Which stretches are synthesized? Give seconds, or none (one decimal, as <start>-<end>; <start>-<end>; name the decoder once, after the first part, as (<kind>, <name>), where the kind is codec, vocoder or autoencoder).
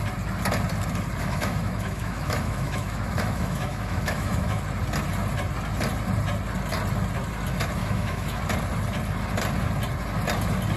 1.2-4.6 (autoencoder, DAC-VAE); 7.8-8.4